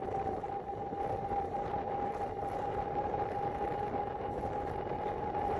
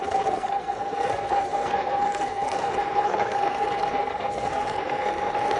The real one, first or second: first